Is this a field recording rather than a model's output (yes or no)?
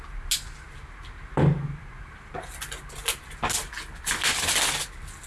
yes